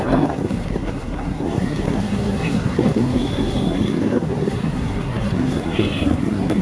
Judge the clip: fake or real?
fake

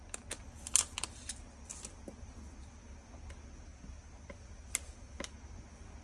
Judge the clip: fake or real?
real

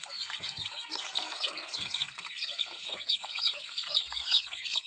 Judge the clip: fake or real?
fake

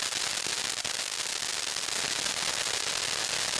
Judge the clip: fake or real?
real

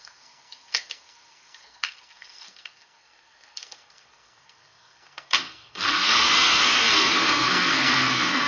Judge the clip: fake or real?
fake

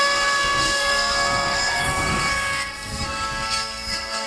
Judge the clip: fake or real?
fake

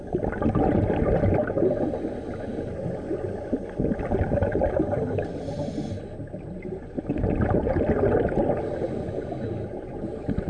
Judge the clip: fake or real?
real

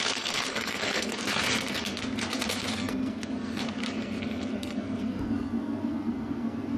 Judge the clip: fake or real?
fake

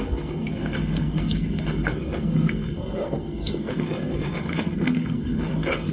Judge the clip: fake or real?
fake